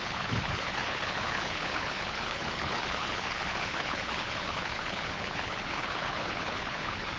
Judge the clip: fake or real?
fake